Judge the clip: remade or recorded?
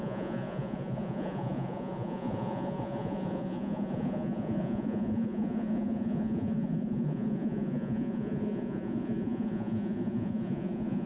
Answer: remade